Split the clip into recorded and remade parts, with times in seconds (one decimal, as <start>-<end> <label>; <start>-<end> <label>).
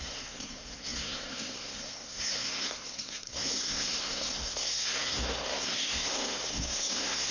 0.0-7.3 remade